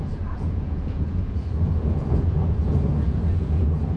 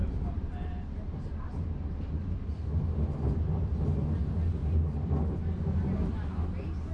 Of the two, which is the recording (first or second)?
second